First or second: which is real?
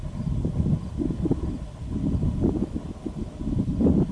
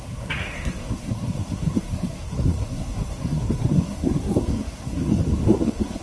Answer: first